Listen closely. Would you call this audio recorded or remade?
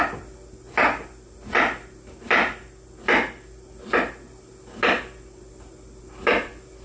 recorded